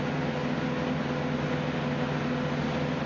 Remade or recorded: recorded